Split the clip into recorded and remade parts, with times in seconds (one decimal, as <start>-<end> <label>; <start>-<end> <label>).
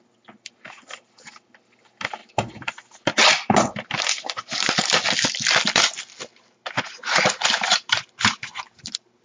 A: 0.0-9.2 recorded